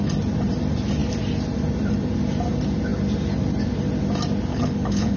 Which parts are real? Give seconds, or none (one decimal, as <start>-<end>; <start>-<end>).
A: 0.0-4.5